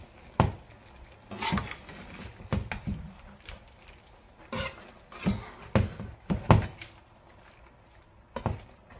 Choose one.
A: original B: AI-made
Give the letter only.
A